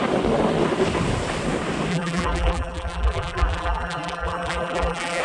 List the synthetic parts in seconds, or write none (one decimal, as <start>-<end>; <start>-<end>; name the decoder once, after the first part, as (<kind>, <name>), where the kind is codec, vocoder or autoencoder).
1.9-5.2 (vocoder, BigVGAN v2)